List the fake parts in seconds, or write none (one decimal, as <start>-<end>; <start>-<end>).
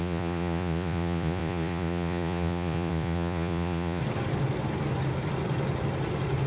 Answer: 0.0-4.0